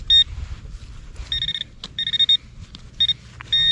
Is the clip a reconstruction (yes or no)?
no